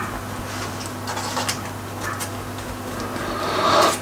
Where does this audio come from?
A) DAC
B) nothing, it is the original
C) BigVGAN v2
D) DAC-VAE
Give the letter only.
B